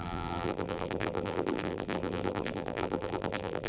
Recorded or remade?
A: remade